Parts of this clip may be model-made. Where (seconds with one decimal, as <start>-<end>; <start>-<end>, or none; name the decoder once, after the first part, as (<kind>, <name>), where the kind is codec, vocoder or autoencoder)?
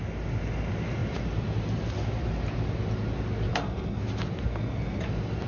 3.5-4.0 (codec, SNAC); 4.5-5.0